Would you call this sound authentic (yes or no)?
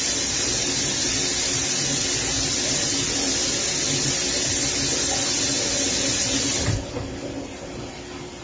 yes